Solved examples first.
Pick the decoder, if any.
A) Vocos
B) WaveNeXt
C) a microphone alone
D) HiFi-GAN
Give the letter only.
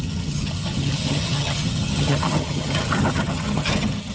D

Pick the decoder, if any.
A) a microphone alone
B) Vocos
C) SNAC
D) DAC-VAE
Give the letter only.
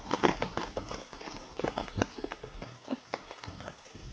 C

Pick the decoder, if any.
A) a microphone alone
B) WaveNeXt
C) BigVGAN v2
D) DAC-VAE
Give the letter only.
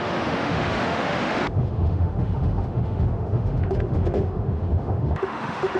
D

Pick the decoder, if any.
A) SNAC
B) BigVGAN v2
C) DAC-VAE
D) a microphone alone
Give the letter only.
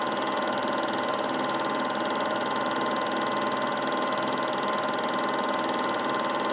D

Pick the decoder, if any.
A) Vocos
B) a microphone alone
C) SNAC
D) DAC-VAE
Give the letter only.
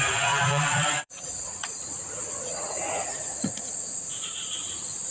A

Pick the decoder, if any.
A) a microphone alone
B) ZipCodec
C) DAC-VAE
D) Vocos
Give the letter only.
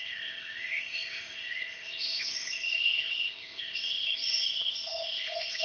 B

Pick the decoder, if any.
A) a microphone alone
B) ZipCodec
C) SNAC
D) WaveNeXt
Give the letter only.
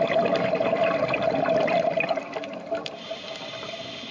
A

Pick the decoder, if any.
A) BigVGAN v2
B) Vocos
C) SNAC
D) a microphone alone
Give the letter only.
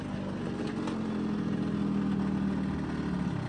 D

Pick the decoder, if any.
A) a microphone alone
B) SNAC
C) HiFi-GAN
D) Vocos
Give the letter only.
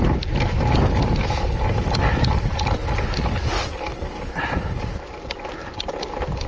A